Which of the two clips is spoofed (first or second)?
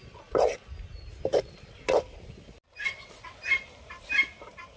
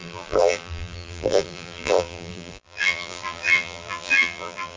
second